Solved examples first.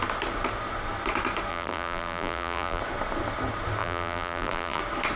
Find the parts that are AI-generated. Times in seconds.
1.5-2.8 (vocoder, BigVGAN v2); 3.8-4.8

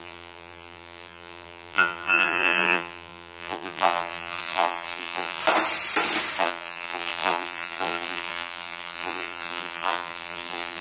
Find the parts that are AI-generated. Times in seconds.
0.0-5.4 (vocoder, BigVGAN v2); 6.4-10.8

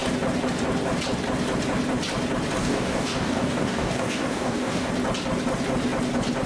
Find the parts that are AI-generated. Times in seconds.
2.6-4.9 (codec, DAC)